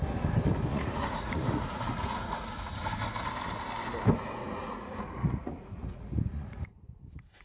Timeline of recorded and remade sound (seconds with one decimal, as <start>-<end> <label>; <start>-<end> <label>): 0.0-0.7 recorded; 0.7-3.0 remade; 3.0-4.4 recorded; 4.4-7.0 remade; 7.0-7.4 recorded